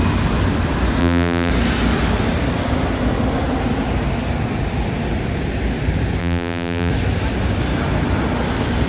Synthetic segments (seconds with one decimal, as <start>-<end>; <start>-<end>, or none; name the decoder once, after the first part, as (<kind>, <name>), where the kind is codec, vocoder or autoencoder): 1.0-1.5 (vocoder, BigVGAN v2); 6.2-6.9